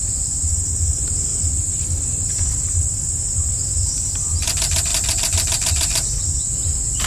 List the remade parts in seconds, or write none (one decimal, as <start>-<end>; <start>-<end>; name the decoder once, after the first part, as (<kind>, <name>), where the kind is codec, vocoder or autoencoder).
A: 4.9-6.2 (vocoder, BigVGAN v2)